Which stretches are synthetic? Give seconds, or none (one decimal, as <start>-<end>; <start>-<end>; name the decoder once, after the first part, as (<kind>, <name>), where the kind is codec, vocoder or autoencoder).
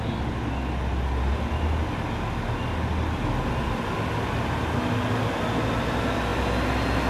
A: none